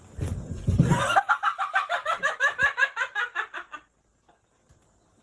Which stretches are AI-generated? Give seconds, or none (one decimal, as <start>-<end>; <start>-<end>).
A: none

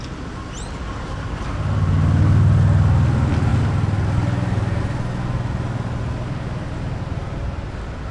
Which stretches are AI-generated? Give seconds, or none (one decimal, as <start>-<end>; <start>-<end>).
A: none

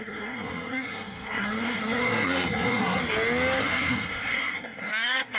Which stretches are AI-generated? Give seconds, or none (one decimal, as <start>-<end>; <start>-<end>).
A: 0.0-3.0; 3.6-5.4

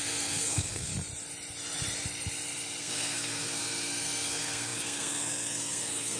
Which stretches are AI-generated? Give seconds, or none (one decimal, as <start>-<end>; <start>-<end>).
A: 0.0-0.9; 2.8-6.2

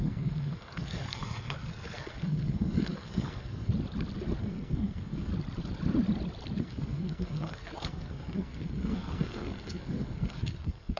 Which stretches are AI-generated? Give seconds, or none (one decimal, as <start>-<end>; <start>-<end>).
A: 0.0-3.7; 4.4-5.3; 6.6-11.0